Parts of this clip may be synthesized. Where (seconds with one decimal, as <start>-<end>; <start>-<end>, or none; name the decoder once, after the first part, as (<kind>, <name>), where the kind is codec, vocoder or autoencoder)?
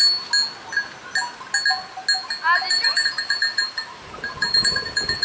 2.7-5.2 (vocoder, BigVGAN v2)